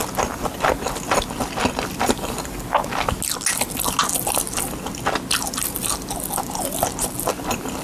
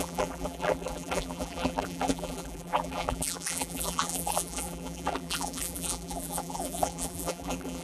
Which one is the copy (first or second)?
second